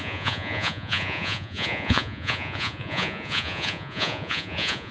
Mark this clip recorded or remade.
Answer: remade